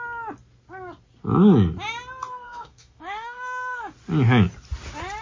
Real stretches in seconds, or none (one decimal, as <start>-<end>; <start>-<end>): 0.0-2.3; 3.9-5.2